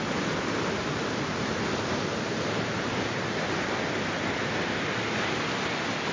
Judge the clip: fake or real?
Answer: real